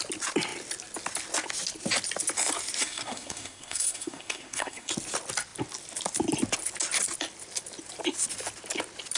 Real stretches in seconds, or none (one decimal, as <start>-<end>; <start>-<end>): 0.0-2.8; 4.9-9.2